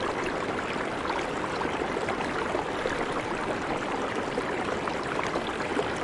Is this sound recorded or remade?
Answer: remade